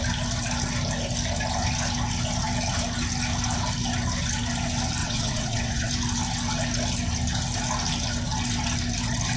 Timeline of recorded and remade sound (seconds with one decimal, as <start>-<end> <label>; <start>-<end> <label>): 0.0-5.0 recorded; 5.0-5.9 remade; 5.9-9.4 recorded